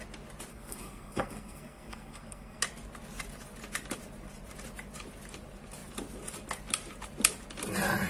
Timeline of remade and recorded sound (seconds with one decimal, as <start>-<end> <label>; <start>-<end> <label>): 0.0-0.5 recorded; 0.5-2.6 remade; 2.6-8.1 recorded